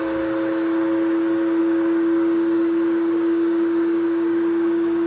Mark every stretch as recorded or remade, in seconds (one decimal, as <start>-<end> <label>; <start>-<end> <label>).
0.0-1.6 recorded; 1.6-5.1 remade